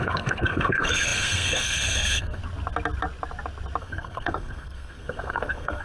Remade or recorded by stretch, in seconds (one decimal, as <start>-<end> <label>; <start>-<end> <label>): 0.0-2.4 remade; 2.4-3.8 recorded; 3.8-5.8 remade